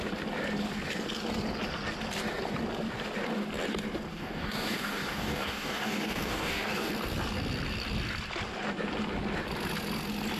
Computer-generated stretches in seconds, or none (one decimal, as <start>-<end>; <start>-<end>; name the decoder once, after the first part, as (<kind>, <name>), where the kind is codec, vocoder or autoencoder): 4.1-6.9 (codec, DAC)